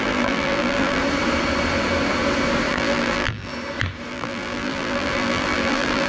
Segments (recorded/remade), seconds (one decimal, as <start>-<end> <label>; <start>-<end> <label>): 0.0-1.0 remade; 1.0-2.7 recorded; 2.7-3.5 remade; 3.5-4.1 recorded; 4.1-6.1 remade